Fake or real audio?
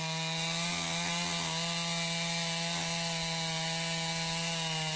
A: real